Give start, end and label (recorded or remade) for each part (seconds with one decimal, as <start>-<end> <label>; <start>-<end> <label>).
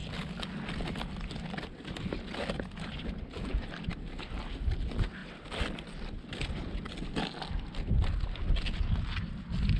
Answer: 0.0-9.8 recorded